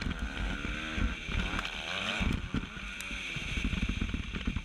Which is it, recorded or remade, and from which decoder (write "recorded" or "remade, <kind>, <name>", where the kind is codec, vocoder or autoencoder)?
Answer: recorded